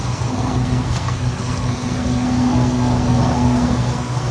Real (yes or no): no